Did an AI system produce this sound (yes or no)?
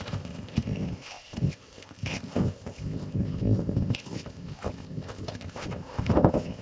yes